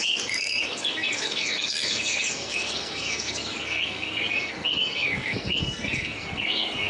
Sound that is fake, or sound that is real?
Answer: fake